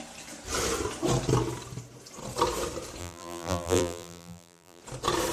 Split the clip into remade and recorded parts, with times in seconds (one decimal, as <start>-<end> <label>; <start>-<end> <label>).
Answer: 0.0-3.0 recorded; 3.0-4.8 remade; 4.8-5.3 recorded